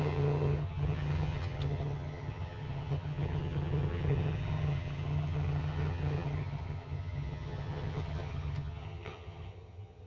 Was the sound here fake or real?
fake